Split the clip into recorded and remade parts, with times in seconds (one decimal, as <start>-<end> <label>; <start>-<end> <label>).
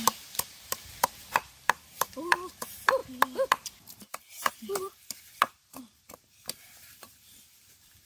0.0-3.0 remade; 3.0-3.9 recorded; 3.9-8.1 remade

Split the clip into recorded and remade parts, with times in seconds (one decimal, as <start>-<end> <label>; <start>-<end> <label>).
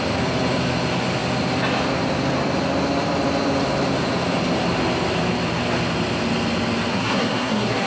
0.0-6.9 recorded; 6.9-7.9 remade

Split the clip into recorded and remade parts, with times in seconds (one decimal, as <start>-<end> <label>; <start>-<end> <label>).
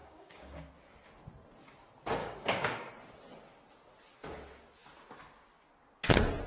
0.0-0.7 remade; 0.7-2.2 recorded; 2.2-2.9 remade; 2.9-6.5 recorded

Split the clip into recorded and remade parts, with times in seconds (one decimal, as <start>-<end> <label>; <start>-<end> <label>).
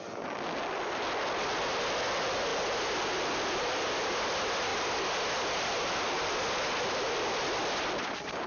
0.0-8.5 recorded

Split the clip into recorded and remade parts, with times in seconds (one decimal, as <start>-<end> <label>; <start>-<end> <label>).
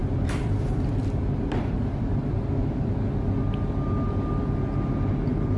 0.0-3.0 remade; 3.0-5.6 recorded